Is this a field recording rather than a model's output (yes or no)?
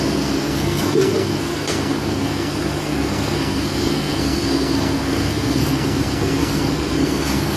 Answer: no